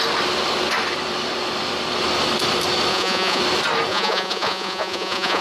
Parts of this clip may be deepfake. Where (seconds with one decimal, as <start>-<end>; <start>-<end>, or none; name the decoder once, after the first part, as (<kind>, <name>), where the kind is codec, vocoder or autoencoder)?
2.9-3.4 (vocoder, Vocos); 3.9-5.4